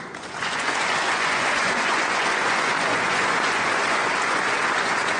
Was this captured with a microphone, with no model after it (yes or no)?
no